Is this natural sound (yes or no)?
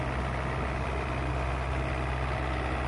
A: yes